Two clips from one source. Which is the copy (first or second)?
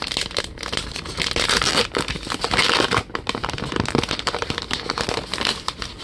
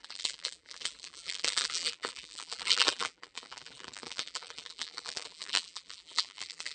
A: second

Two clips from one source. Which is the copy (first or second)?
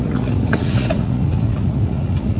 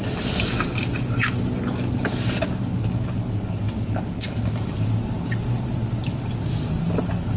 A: first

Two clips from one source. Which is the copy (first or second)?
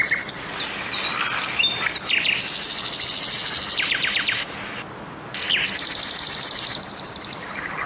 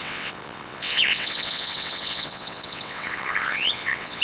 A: second